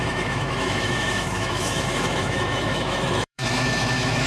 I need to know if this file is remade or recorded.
remade